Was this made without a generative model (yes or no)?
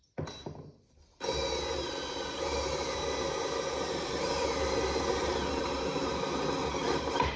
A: yes